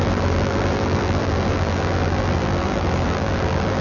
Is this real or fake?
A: fake